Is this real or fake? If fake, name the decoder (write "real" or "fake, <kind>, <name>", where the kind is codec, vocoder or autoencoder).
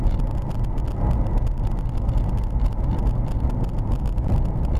real